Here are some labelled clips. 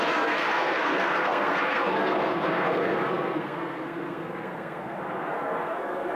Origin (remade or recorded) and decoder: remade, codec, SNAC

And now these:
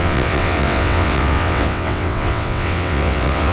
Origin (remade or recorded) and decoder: remade, vocoder, WaveNeXt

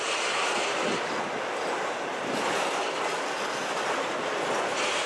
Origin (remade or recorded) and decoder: recorded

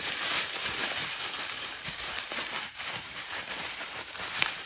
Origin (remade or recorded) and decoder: remade, vocoder, BigVGAN v2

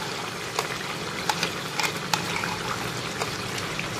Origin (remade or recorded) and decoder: recorded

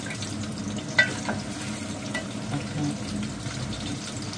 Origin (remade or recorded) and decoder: recorded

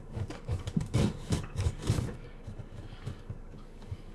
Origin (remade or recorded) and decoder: remade, codec, DAC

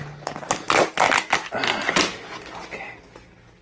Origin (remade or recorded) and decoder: recorded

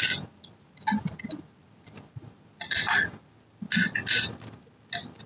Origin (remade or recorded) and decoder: recorded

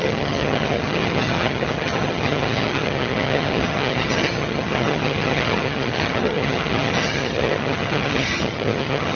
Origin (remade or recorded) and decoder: remade, vocoder, HiFi-GAN